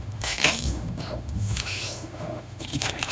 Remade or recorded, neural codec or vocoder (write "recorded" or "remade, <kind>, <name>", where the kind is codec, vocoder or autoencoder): remade, autoencoder, DAC-VAE